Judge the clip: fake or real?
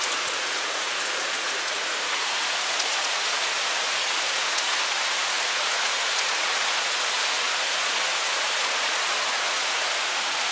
fake